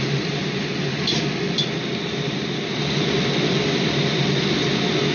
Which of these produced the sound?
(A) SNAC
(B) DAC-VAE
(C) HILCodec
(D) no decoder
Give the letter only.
D